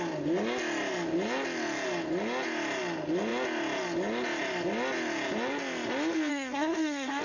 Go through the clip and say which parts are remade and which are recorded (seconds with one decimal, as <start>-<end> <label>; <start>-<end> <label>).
0.0-6.3 recorded; 6.3-7.2 remade